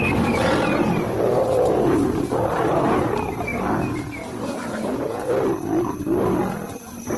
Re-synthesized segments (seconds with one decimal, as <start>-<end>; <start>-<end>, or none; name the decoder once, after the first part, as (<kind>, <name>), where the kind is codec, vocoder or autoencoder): none